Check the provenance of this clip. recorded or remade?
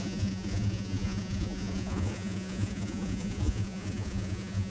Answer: remade